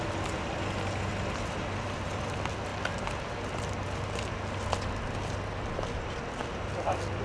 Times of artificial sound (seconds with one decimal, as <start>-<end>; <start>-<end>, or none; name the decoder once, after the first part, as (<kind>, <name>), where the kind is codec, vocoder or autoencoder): none